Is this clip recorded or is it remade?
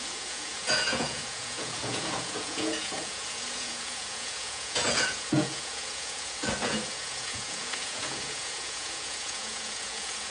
remade